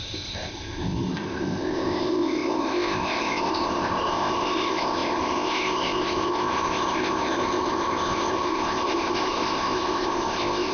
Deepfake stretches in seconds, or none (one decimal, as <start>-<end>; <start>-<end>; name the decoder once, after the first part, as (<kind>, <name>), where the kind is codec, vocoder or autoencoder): 0.0-10.7 (codec, ZipCodec)